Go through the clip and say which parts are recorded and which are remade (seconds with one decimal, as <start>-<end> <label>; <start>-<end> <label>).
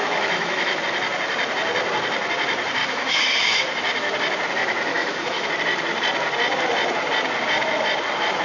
0.0-0.8 remade; 0.8-2.8 recorded; 2.8-3.6 remade; 3.6-4.9 recorded; 4.9-5.5 remade; 5.5-8.4 recorded